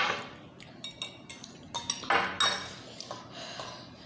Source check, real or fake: real